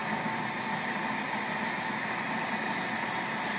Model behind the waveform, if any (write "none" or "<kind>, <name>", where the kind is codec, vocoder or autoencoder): none